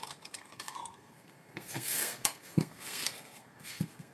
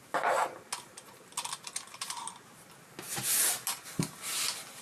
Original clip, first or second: second